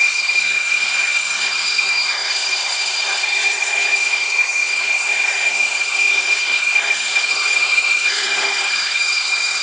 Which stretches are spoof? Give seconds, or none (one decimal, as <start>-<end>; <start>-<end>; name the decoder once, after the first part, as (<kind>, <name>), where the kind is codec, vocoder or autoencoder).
0.0-9.6 (codec, SNAC)